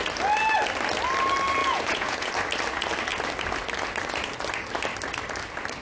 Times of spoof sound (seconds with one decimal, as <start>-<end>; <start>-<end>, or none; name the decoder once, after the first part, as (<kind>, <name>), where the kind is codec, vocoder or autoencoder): 1.6-2.3 (vocoder, Vocos)